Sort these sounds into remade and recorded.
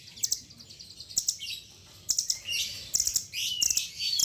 recorded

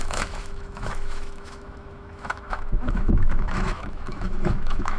remade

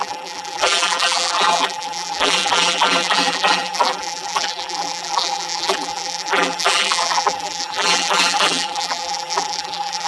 remade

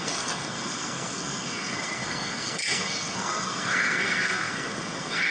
remade